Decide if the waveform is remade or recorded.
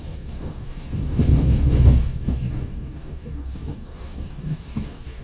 remade